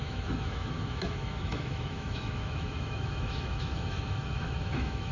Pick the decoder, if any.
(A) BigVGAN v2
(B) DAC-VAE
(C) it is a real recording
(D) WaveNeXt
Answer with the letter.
B